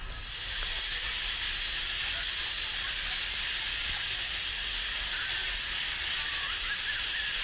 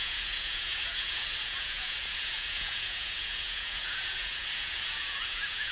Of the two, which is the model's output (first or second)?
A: second